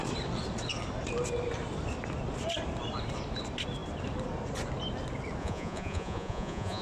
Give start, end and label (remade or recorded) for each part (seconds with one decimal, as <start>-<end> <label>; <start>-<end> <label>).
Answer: 0.0-5.4 recorded; 5.4-6.8 remade